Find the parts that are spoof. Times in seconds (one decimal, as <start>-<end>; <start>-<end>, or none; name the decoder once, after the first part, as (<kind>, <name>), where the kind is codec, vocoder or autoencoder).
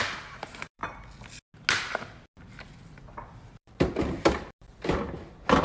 0.0-0.8 (vocoder, BigVGAN v2); 2.4-5.6